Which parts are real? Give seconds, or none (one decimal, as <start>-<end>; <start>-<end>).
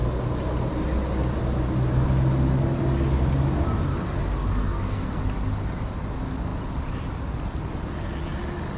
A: 0.0-4.6; 5.2-8.8